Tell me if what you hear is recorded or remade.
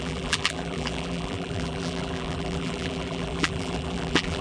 remade